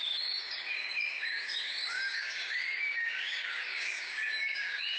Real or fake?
fake